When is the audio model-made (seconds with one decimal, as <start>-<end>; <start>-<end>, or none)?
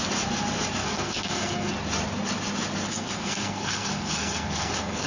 0.8-1.7; 2.9-5.1